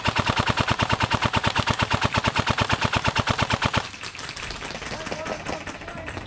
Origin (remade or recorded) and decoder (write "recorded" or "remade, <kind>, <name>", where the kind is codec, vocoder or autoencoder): recorded